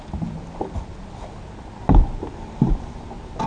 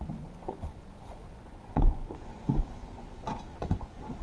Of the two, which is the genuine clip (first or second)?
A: first